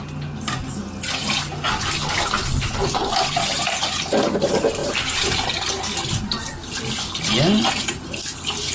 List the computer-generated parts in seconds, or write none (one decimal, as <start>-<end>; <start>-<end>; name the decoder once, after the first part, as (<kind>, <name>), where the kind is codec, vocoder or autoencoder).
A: none